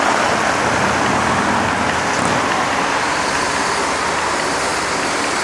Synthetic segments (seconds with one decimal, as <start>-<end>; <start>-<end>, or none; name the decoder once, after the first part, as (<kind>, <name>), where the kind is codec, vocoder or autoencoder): none